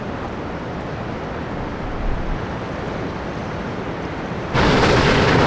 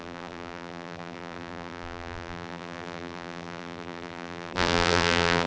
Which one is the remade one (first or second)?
second